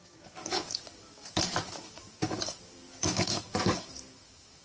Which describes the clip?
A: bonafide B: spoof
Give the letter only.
B